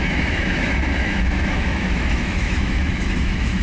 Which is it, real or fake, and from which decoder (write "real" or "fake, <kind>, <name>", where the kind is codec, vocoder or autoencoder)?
fake, autoencoder, DAC-VAE